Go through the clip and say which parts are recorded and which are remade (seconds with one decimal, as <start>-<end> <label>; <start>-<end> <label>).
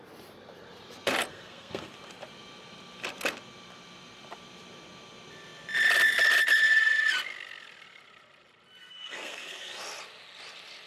0.0-1.3 recorded; 1.3-1.9 remade; 1.9-8.8 recorded; 8.8-9.8 remade; 9.8-10.9 recorded